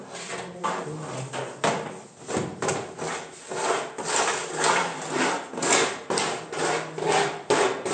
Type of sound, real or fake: real